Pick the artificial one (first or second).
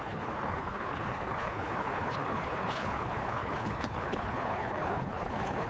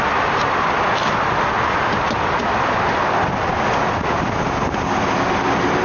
first